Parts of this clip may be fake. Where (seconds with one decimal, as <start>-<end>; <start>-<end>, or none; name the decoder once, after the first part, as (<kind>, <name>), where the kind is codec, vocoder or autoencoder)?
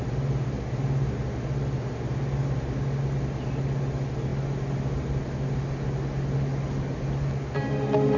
none